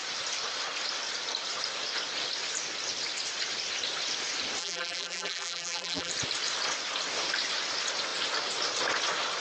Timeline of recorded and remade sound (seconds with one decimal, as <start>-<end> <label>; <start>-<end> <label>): 0.0-4.6 recorded; 4.6-6.1 remade; 6.1-9.4 recorded